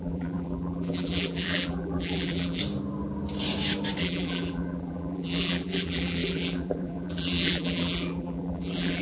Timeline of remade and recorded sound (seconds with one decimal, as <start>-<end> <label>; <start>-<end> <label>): 0.0-2.6 remade; 2.6-4.0 recorded; 4.0-9.0 remade